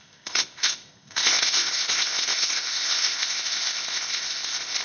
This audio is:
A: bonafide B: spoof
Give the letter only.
B